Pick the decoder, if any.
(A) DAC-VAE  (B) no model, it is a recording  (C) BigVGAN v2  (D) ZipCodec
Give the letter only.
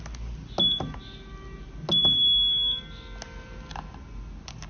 B